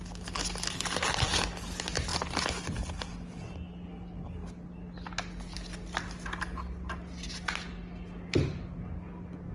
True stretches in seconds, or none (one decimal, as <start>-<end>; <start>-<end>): 0.0-9.5